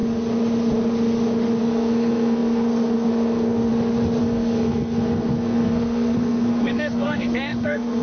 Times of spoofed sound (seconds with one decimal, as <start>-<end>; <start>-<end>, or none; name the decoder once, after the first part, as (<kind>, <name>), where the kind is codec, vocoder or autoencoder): 1.6-3.7 (codec, SNAC); 4.2-8.0